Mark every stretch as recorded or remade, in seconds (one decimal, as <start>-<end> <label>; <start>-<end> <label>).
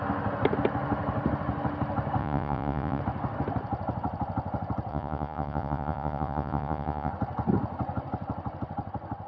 0.0-2.2 recorded; 2.2-3.0 remade; 3.0-4.9 recorded; 4.9-7.1 remade; 7.1-9.3 recorded